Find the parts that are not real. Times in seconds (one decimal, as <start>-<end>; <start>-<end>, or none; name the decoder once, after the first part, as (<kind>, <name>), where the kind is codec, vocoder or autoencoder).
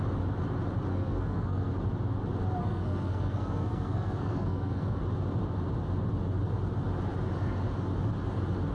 0.9-1.7 (codec, SNAC); 2.6-5.0